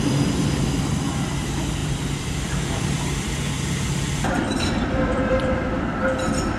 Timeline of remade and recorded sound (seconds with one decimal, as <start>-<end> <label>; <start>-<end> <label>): 0.0-1.8 recorded; 1.8-5.8 remade; 5.8-6.6 recorded